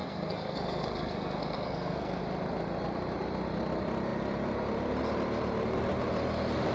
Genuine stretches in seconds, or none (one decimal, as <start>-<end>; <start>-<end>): 2.2-6.7

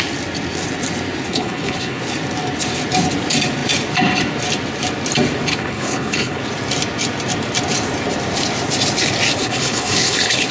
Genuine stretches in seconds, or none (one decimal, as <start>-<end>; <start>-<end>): 0.0-1.3; 2.0-5.5; 6.4-9.4

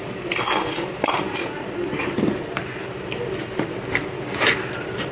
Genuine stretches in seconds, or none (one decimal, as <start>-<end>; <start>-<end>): 0.0-5.1

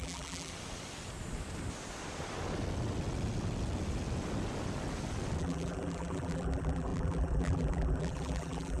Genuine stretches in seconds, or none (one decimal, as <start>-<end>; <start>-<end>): 0.5-5.4